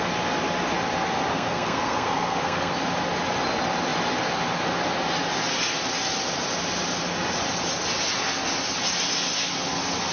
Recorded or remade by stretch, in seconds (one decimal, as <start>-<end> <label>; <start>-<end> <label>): 0.0-1.3 recorded; 1.3-2.7 remade; 2.7-10.1 recorded